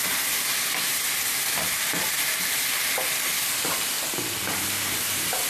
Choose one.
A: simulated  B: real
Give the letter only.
B